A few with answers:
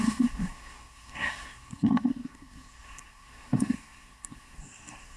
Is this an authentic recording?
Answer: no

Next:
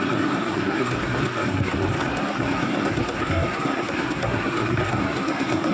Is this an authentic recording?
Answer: no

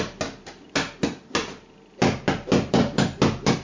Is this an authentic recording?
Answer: yes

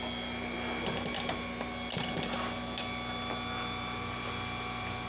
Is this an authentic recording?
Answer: yes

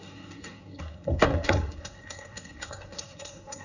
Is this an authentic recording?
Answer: no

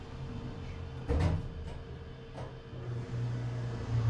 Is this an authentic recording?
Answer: yes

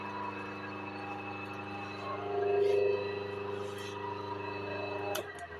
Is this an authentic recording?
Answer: yes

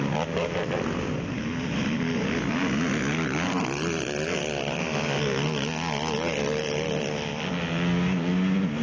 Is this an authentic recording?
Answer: yes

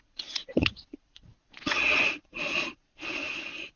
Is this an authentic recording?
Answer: no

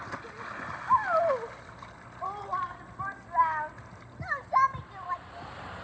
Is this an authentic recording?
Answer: yes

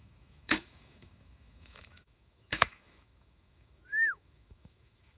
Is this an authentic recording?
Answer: no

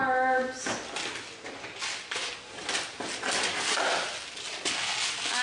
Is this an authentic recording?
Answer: yes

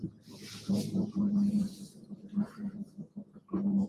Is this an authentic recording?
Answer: yes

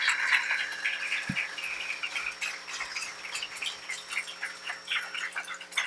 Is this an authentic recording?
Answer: yes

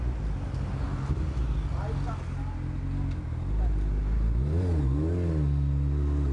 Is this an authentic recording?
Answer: yes